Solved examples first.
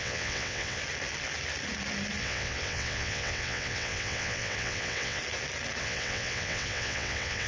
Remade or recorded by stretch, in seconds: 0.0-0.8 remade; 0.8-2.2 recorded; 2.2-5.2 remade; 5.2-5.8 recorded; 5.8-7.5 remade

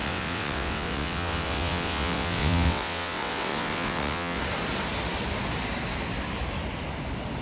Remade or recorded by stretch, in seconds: 0.0-4.4 remade; 4.4-7.4 recorded